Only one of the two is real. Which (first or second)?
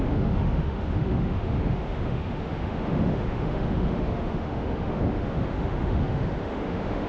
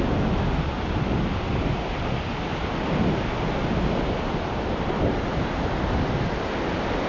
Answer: second